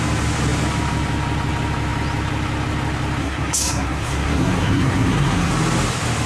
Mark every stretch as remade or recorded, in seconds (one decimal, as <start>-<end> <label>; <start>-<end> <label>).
0.0-3.2 recorded; 3.2-5.5 remade; 5.5-6.3 recorded